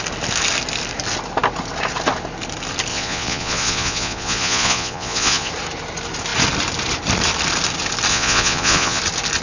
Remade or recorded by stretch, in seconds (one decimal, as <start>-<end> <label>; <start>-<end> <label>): 0.0-2.9 recorded; 2.9-5.5 remade; 5.5-8.1 recorded; 8.1-9.0 remade; 9.0-9.4 recorded